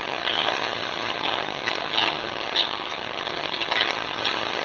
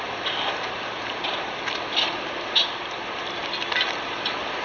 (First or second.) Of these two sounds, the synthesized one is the first